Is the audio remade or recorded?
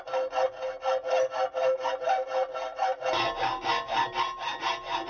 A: recorded